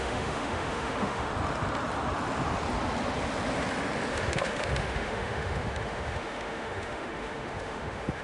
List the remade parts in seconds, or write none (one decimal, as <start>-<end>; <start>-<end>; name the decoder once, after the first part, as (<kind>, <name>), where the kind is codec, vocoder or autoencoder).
0.0-1.3 (autoencoder, DAC-VAE); 4.1-8.2